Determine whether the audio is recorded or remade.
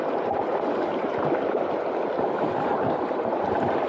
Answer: recorded